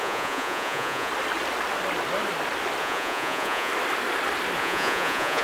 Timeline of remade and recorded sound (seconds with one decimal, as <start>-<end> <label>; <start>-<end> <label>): 0.0-1.1 remade; 1.1-2.8 recorded; 2.8-3.7 remade; 3.7-4.6 recorded; 4.6-5.4 remade

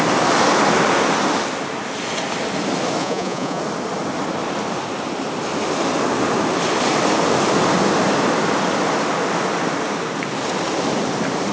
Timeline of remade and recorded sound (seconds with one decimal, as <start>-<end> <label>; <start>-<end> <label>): 0.0-3.0 recorded; 3.0-3.6 remade; 3.6-11.5 recorded